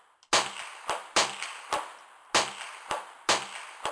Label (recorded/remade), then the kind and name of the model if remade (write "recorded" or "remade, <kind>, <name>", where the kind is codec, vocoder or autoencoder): recorded